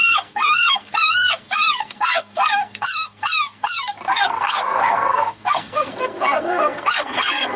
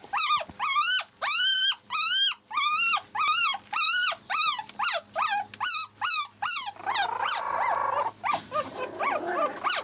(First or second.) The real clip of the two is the second